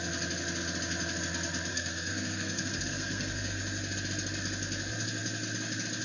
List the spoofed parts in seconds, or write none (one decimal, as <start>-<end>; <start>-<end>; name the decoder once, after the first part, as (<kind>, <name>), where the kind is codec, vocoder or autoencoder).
1.7-3.6 (codec, SNAC)